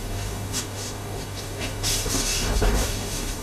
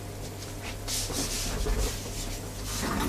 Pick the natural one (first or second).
second